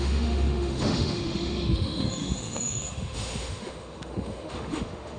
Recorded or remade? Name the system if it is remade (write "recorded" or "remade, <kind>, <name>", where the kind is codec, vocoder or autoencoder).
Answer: remade, autoencoder, DAC-VAE